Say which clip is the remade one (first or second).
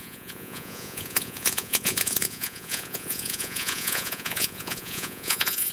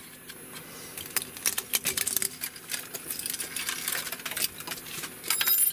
first